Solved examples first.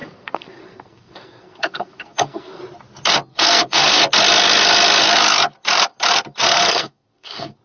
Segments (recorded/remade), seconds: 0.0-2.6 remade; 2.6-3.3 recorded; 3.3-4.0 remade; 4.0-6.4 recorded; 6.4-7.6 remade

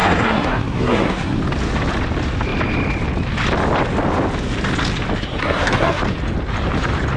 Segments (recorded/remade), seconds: 0.0-1.4 remade; 1.4-5.4 recorded; 5.4-6.0 remade; 6.0-7.2 recorded

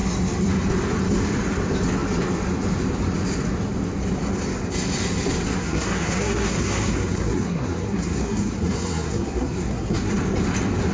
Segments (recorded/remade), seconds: 0.0-5.6 recorded; 5.6-10.1 remade; 10.1-10.9 recorded

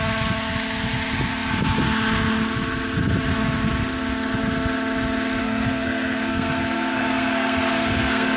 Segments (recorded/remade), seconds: 0.0-5.4 recorded; 5.4-8.4 remade